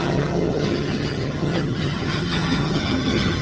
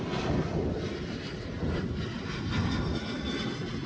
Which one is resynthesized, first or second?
first